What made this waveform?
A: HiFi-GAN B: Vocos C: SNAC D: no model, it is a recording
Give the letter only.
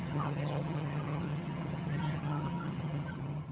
A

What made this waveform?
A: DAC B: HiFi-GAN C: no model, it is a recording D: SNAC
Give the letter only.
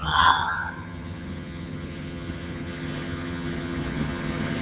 B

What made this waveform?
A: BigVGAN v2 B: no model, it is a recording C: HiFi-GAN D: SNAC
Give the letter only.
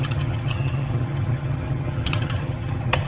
C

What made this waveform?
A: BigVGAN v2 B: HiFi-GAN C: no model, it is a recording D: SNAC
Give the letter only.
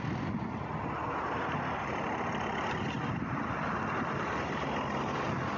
C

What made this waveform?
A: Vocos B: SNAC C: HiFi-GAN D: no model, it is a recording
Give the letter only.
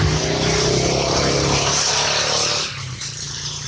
D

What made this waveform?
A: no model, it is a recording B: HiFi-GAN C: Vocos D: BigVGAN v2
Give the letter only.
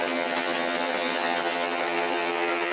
B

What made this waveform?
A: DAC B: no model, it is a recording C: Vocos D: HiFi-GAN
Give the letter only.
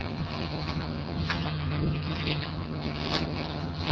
D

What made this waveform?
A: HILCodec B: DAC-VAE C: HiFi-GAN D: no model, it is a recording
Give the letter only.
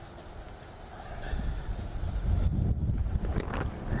D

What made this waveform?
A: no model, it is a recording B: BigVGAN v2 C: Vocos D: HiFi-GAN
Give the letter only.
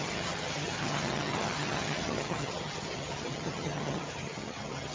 D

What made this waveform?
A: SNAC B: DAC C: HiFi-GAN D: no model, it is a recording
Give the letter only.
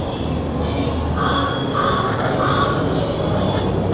D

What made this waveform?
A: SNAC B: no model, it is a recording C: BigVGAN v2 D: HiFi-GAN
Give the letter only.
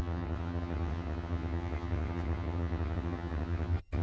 D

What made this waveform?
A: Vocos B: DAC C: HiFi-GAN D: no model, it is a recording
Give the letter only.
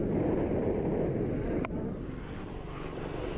D